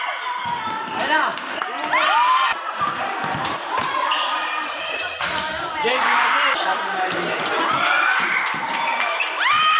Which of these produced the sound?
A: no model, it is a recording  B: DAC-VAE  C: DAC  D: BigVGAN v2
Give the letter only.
D